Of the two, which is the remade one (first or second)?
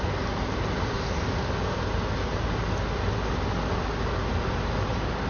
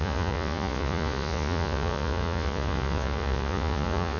second